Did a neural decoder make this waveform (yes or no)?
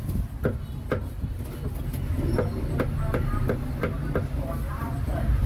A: no